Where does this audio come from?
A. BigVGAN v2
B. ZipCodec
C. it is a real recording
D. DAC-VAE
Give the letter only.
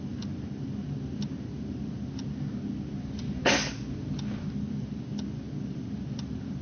C